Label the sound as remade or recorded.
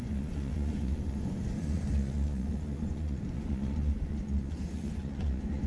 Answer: remade